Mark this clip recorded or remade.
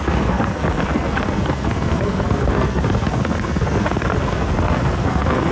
remade